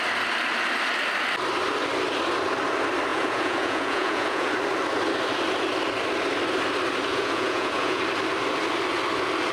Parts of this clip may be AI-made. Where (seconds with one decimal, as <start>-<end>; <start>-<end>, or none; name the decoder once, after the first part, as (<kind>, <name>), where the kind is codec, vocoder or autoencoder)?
3.1-4.5 (vocoder, Vocos); 7.1-8.0